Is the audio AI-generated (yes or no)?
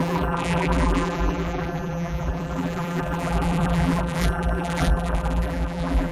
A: yes